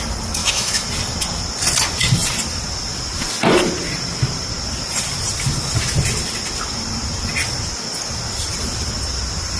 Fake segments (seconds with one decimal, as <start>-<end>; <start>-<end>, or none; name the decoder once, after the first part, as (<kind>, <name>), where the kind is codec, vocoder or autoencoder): 0.4-0.9 (autoencoder, DAC-VAE)